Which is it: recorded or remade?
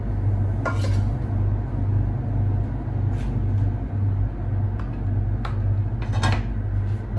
recorded